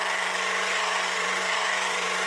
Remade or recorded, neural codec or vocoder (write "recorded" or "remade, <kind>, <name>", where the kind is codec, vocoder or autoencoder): remade, vocoder, BigVGAN v2